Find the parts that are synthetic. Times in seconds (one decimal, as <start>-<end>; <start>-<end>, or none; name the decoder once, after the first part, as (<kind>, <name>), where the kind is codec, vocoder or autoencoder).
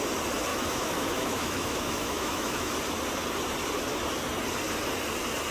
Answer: 0.5-2.7 (autoencoder, DAC-VAE)